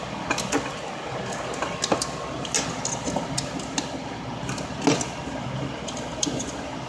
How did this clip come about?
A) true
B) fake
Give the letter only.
A